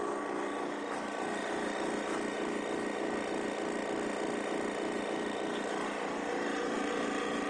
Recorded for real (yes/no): yes